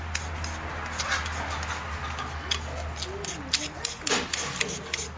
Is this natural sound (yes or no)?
yes